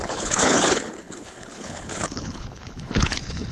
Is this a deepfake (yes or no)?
yes